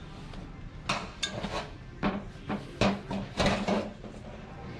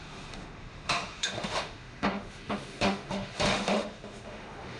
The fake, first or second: second